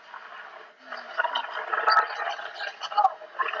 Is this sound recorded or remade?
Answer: recorded